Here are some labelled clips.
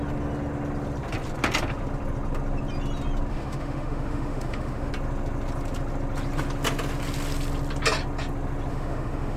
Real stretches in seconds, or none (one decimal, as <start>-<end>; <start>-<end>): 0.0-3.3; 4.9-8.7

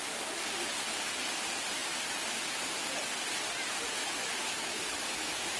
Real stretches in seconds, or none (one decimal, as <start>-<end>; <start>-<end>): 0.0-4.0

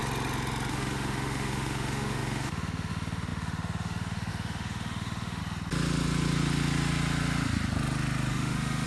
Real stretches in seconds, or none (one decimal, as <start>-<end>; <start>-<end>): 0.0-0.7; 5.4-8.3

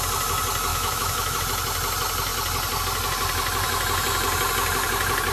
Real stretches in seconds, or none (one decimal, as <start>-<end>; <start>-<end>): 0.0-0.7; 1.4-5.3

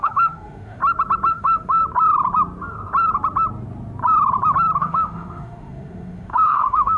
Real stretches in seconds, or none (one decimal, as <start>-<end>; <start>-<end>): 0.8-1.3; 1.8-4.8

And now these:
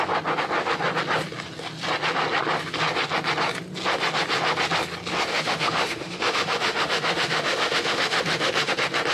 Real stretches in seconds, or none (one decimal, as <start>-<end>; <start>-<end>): 0.0-5.3; 8.7-9.1